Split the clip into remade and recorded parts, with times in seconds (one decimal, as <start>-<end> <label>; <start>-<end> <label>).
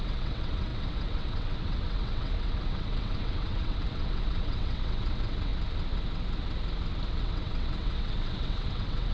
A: 0.0-5.5 remade; 5.5-7.2 recorded; 7.2-9.1 remade